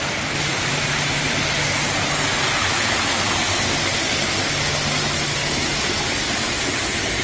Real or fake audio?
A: real